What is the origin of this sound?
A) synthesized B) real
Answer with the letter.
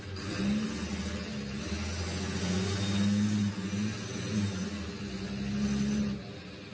B